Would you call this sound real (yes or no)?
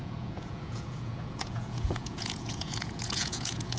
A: no